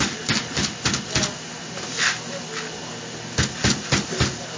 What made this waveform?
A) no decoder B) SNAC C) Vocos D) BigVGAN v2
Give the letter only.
A